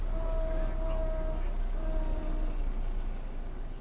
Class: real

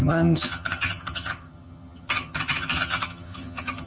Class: fake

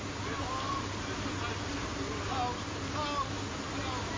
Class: real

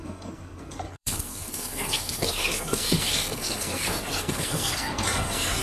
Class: fake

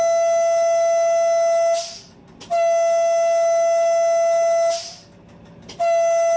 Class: real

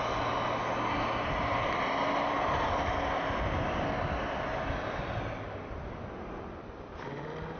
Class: real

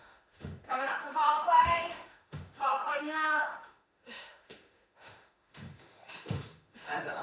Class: fake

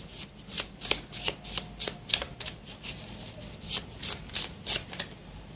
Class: real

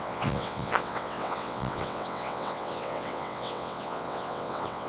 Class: fake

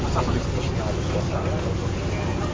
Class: real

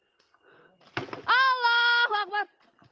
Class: real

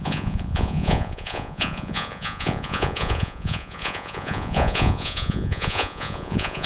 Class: fake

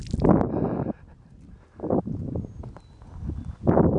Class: real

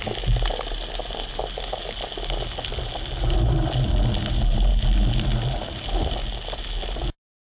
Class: real